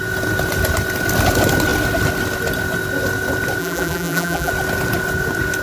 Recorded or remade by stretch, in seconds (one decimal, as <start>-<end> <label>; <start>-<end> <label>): 0.0-3.6 recorded; 3.6-4.5 remade; 4.5-5.6 recorded